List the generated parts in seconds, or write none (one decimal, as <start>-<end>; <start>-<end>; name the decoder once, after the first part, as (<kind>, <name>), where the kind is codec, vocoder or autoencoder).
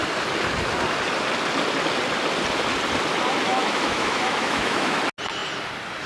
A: 3.5-5.0 (autoencoder, DAC-VAE)